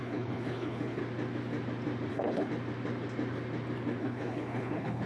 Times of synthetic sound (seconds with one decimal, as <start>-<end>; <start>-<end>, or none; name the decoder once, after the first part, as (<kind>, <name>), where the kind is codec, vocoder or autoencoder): 0.0-1.0 (codec, HILCodec); 2.1-2.5; 4.0-5.1